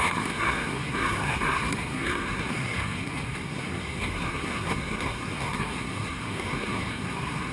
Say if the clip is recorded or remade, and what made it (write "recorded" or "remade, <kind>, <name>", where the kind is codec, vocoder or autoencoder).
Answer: remade, codec, SNAC